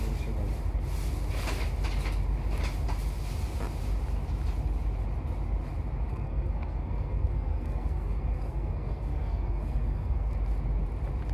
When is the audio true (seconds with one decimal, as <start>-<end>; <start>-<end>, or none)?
0.0-6.1; 10.3-11.3